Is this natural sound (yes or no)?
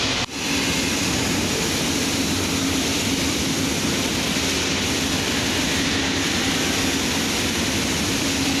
yes